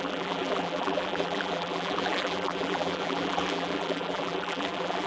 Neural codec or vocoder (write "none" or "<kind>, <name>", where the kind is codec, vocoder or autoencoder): vocoder, BigVGAN v2